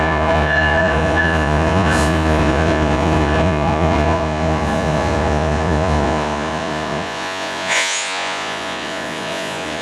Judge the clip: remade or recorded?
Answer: remade